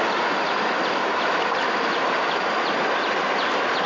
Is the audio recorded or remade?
recorded